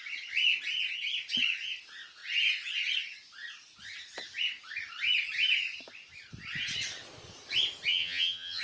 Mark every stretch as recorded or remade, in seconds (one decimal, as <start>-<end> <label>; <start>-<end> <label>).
0.0-7.9 recorded; 7.9-8.6 remade